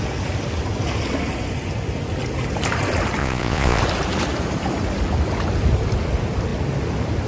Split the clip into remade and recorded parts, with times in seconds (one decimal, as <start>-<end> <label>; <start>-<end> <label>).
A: 0.0-3.2 recorded; 3.2-3.8 remade; 3.8-7.3 recorded